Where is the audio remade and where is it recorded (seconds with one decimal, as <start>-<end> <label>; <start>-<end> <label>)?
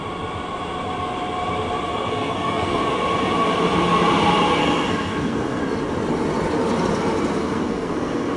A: 0.0-1.9 recorded; 1.9-2.8 remade; 2.8-4.6 recorded; 4.6-5.6 remade; 5.6-7.4 recorded; 7.4-8.4 remade